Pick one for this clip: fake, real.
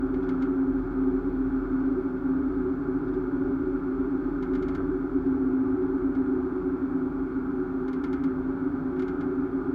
real